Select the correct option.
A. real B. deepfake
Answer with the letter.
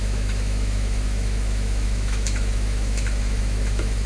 B